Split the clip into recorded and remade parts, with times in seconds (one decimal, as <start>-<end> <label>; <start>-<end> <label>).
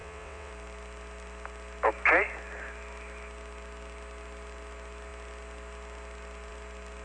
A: 0.0-0.5 remade; 0.5-7.0 recorded